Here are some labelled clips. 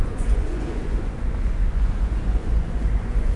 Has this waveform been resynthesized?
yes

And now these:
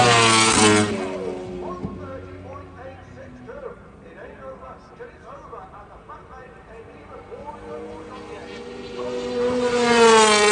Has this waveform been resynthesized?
no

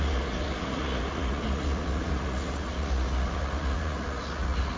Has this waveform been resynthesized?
yes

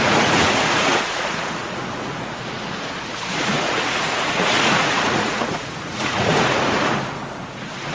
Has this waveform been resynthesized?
yes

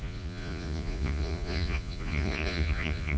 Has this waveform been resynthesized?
yes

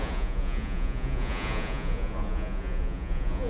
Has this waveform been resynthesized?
yes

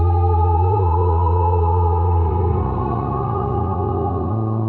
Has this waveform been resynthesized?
yes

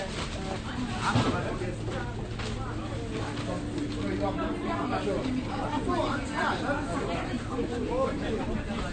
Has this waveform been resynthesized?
no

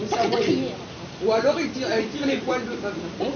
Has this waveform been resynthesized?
no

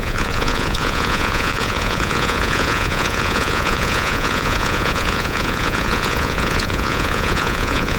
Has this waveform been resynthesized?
yes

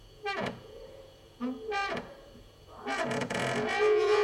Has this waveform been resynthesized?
yes